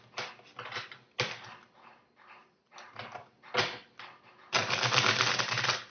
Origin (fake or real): real